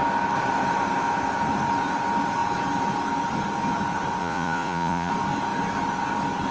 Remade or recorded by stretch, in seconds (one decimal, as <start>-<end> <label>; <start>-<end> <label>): 0.0-4.2 recorded; 4.2-5.1 remade; 5.1-6.5 recorded